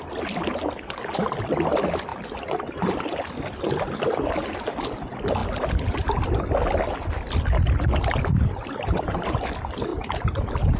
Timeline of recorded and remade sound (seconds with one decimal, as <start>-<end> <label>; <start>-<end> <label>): 0.0-2.1 recorded; 2.1-2.9 remade; 2.9-9.9 recorded; 9.9-10.8 remade